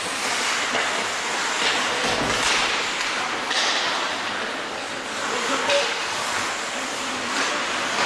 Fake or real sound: real